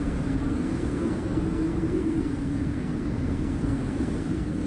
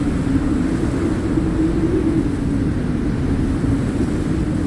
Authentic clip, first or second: second